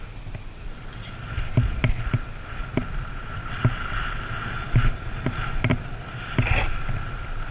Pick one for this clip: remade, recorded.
recorded